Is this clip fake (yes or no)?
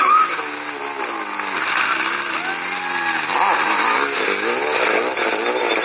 no